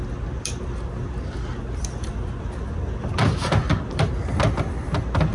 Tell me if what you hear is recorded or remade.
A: recorded